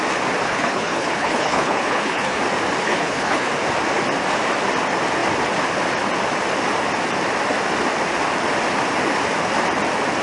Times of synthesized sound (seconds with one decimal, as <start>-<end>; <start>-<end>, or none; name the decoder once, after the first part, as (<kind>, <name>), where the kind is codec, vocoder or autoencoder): 0.4-2.4 (codec, HILCodec); 2.8-3.5

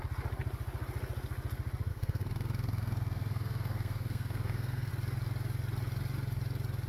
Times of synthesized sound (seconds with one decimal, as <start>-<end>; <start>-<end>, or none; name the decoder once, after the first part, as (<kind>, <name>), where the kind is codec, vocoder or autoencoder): 1.9-4.9 (codec, SNAC)

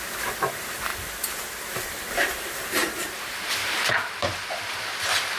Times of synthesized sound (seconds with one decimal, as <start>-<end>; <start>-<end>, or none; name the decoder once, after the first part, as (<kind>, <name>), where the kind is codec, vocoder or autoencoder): 0.0-0.9 (vocoder, BigVGAN v2); 1.7-5.4

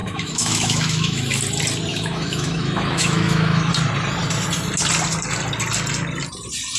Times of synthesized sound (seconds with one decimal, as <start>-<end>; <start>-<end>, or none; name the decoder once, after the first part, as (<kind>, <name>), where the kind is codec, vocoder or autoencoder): 0.0-1.4 (autoencoder, DAC-VAE); 1.9-3.7

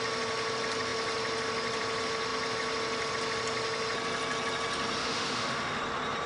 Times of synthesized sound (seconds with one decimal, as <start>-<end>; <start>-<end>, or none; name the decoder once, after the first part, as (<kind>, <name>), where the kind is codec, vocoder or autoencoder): 5.0-5.8 (autoencoder, DAC-VAE)

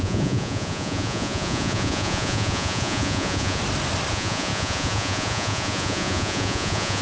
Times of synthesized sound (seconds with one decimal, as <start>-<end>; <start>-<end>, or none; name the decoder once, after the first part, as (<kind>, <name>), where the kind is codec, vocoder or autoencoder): 0.0-3.6 (vocoder, Vocos); 4.1-7.0